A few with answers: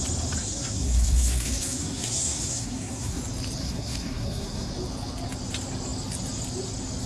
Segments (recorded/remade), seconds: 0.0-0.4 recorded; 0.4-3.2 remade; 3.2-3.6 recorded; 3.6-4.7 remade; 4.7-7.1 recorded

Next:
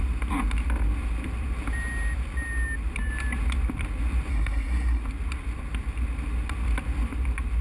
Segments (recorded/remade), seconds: 0.0-4.3 recorded; 4.3-5.0 remade; 5.0-7.6 recorded

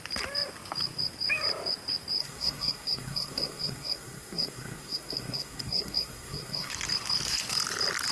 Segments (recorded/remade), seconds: 0.0-2.2 recorded; 2.2-6.7 remade; 6.7-8.1 recorded

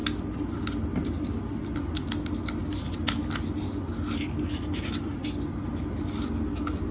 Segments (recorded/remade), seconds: 0.0-6.9 recorded